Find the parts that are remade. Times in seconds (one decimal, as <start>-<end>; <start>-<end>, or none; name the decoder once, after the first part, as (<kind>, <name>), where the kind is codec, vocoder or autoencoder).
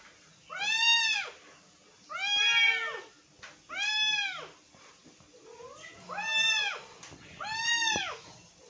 none